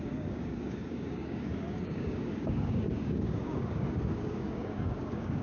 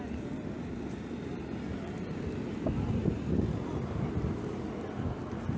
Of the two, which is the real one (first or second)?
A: second